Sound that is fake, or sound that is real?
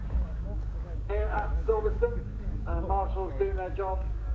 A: fake